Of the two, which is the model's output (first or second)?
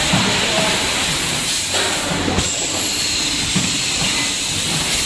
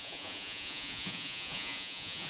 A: second